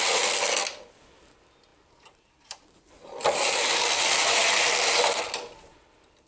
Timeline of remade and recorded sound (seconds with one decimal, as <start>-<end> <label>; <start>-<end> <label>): 0.0-6.3 remade